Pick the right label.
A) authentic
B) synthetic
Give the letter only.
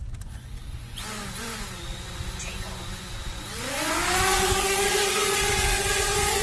B